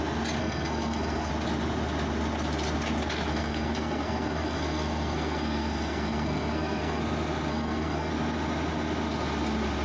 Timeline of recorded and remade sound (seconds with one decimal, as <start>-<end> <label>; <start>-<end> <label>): 0.0-0.4 recorded; 0.4-1.3 remade; 1.3-3.3 recorded; 3.3-7.0 remade; 7.0-7.5 recorded; 7.5-8.1 remade; 8.1-9.8 recorded